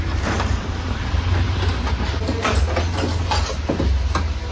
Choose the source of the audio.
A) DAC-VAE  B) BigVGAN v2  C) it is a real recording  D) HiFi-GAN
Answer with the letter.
C